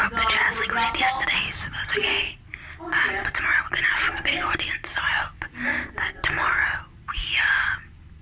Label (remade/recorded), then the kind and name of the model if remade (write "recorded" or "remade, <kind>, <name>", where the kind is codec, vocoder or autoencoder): recorded